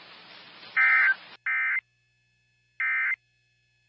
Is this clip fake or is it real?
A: real